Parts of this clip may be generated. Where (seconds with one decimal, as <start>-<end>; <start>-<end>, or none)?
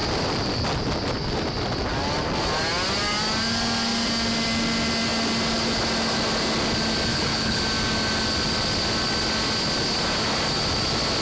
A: 7.1-7.6